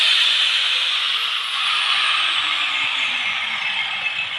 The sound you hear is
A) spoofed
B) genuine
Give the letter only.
A